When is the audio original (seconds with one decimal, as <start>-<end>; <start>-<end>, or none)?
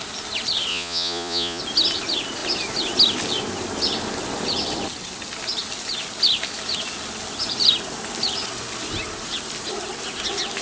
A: 0.0-0.7; 1.6-10.6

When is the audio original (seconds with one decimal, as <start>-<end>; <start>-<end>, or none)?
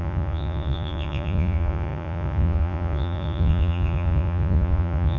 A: none